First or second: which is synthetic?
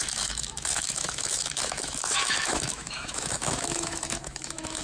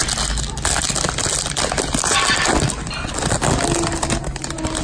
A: first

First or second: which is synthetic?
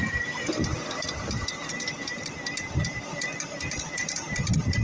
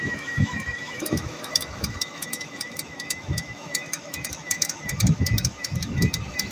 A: second